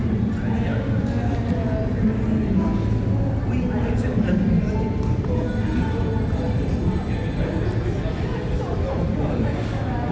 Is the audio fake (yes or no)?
no